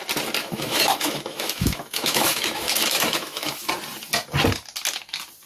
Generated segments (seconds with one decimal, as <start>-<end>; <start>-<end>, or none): 0.4-3.7